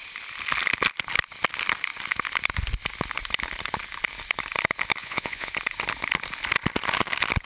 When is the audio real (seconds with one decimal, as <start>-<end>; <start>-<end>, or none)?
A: 0.0-5.0; 5.5-7.5